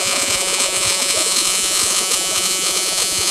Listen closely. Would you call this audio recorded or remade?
remade